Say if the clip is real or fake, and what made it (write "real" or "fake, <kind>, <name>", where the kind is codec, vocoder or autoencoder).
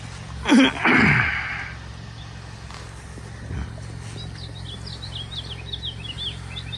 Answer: real